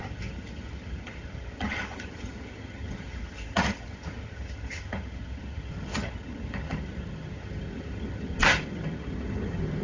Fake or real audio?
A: fake